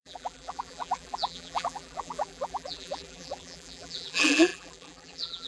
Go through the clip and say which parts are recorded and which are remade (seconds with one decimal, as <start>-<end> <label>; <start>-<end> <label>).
0.0-5.5 remade